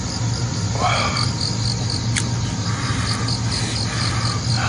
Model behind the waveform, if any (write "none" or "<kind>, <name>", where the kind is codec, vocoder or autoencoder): none